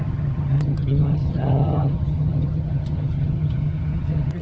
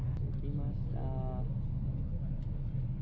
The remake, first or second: first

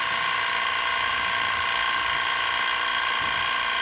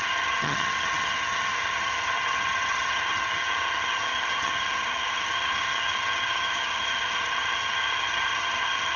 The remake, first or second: second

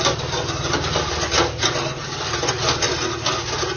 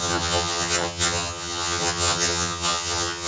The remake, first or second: second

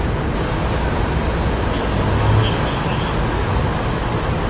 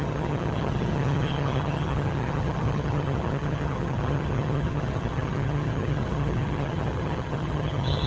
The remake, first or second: second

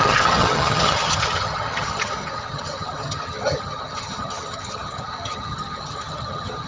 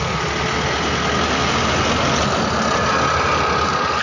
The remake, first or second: first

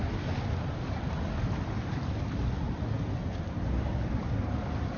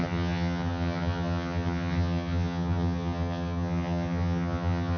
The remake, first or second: second